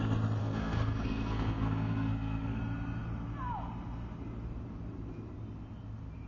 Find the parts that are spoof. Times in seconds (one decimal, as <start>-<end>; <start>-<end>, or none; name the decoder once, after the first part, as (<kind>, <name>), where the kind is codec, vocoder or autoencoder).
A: 0.4-2.6 (codec, SNAC)

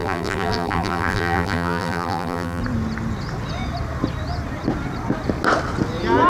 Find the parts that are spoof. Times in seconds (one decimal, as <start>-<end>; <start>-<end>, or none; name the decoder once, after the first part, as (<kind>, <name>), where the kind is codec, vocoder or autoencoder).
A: 0.0-2.6 (vocoder, BigVGAN v2)

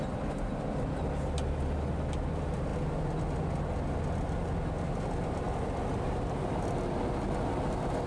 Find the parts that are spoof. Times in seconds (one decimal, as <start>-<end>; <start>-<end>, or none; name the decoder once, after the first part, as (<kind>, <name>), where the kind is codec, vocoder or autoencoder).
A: none